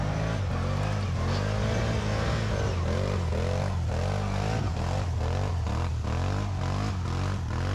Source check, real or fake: real